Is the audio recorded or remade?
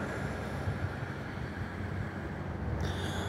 recorded